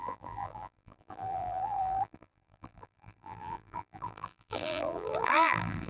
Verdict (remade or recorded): remade